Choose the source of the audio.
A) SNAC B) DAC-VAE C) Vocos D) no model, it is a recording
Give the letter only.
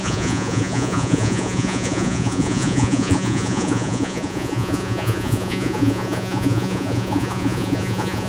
C